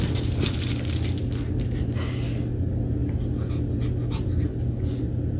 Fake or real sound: real